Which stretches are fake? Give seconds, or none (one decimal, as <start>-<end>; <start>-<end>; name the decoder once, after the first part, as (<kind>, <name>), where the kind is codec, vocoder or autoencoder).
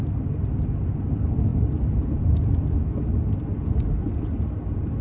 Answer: none